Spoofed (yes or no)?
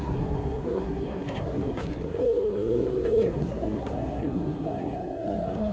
yes